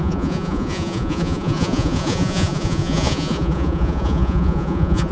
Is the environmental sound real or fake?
fake